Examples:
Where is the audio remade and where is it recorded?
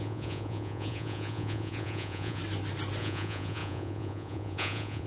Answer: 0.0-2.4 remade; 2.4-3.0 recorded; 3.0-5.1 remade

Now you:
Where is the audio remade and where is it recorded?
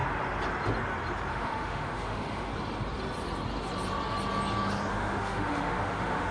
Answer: 0.0-1.3 recorded; 1.3-2.5 remade; 2.5-4.9 recorded; 4.9-6.3 remade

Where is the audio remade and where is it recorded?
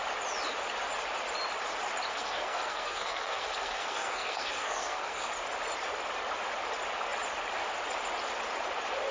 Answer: 0.0-2.1 recorded; 2.1-5.3 remade; 5.3-9.1 recorded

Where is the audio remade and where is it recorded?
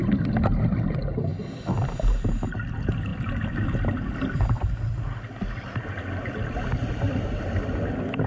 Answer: 0.0-8.3 recorded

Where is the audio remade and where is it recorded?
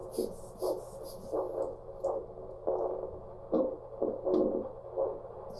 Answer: 0.0-5.6 recorded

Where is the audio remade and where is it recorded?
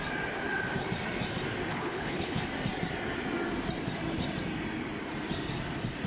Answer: 0.0-1.7 recorded; 1.7-2.4 remade; 2.4-6.1 recorded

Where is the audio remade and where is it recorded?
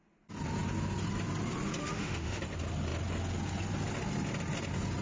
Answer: 0.0-1.8 recorded; 1.8-2.4 remade; 2.4-5.0 recorded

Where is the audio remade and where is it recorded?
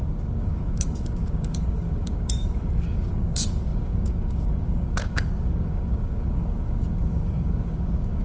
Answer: 0.0-8.2 remade